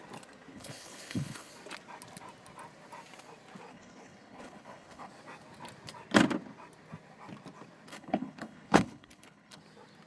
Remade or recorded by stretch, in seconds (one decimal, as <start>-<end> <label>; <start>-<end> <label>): 0.0-0.5 recorded; 0.5-1.5 remade; 1.5-3.7 recorded; 3.7-5.1 remade; 5.1-7.9 recorded; 7.9-9.6 remade; 9.6-10.1 recorded